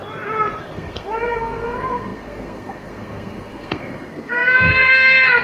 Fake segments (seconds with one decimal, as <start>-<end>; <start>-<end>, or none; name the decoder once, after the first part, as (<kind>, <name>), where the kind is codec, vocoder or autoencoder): 0.6-5.4 (codec, SNAC)